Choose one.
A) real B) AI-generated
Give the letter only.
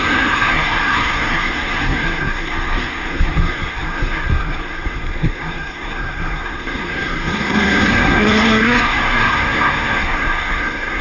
B